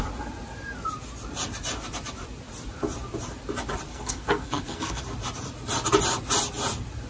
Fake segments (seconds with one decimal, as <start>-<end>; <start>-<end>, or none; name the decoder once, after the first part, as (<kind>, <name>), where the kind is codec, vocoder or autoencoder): 3.9-5.0 (codec, SNAC)